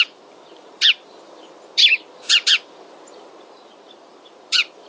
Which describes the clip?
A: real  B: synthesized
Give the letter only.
B